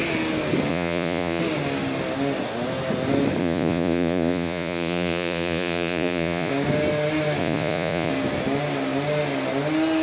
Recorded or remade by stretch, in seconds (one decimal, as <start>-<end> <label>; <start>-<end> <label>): 0.0-0.7 recorded; 0.7-1.4 remade; 1.4-3.4 recorded; 3.4-6.5 remade; 6.5-7.4 recorded; 7.4-8.1 remade; 8.1-10.0 recorded